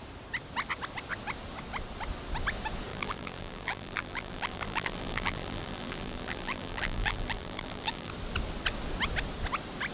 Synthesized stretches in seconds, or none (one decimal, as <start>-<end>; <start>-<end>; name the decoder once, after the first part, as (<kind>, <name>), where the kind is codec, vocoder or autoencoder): 2.9-8.1 (vocoder, BigVGAN v2)